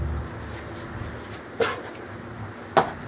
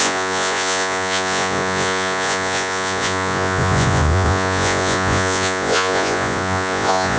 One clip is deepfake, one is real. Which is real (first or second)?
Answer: first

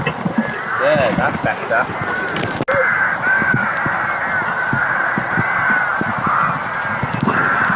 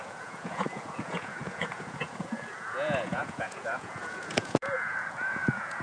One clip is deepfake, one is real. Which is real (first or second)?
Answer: first